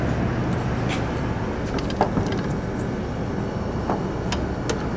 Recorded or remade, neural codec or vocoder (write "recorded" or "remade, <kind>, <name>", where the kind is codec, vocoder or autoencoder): recorded